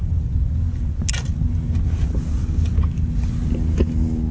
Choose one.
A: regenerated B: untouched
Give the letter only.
B